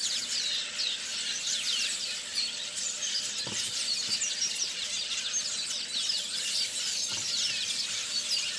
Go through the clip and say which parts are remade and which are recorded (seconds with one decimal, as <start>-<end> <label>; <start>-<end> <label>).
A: 0.0-8.6 recorded

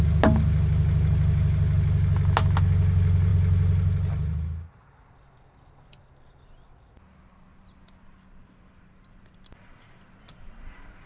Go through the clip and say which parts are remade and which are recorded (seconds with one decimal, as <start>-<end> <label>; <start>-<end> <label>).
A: 0.0-11.1 recorded

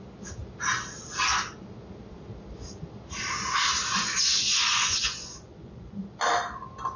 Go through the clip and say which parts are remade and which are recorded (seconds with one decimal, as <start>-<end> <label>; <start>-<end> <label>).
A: 0.0-3.8 recorded; 3.8-6.0 remade; 6.0-7.0 recorded